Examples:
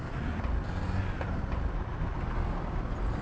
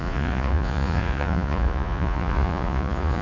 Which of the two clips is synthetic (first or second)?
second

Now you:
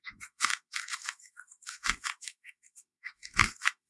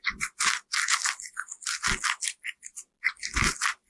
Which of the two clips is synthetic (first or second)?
first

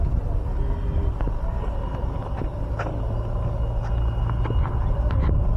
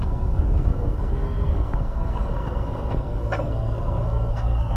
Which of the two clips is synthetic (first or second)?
second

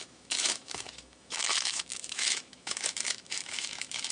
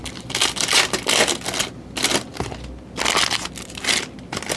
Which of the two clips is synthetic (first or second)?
first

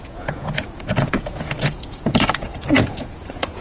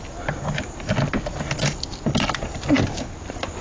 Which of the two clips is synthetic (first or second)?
first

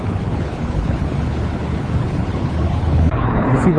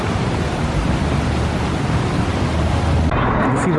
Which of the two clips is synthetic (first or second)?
first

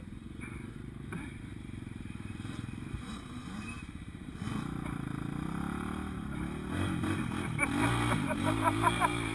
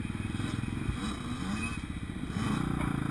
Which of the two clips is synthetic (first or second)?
first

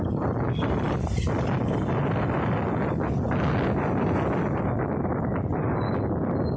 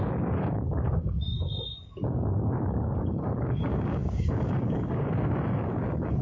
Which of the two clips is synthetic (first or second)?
second